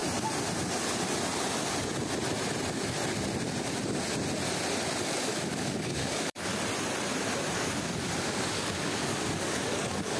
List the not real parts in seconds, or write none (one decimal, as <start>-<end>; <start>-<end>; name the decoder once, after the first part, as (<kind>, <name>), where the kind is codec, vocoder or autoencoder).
5.0-6.5 (codec, DAC); 7.5-10.2

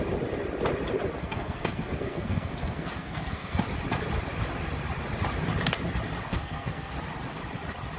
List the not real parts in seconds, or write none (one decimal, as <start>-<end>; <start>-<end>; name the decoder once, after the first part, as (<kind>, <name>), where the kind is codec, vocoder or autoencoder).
1.2-3.6 (codec, SNAC); 6.3-6.9